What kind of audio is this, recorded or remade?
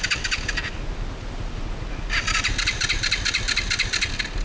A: recorded